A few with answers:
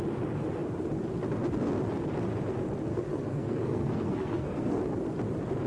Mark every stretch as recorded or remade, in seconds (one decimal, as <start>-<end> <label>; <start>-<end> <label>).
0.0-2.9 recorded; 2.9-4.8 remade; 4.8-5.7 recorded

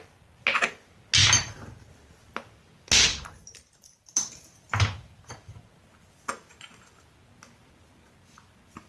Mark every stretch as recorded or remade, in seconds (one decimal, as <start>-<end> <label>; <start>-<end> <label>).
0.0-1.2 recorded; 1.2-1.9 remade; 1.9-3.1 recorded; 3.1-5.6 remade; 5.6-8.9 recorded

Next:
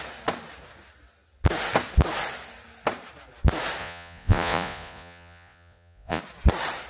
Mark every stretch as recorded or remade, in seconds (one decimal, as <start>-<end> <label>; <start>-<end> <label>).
0.0-3.8 recorded; 3.8-6.2 remade; 6.2-6.9 recorded